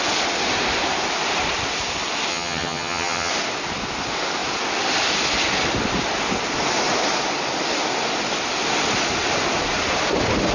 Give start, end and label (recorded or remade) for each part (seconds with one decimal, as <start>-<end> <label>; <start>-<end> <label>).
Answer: 0.0-2.3 recorded; 2.3-3.3 remade; 3.3-10.5 recorded